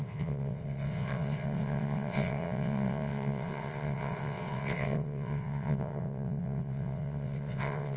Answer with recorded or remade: remade